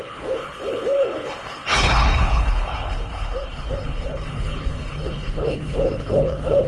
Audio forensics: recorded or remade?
remade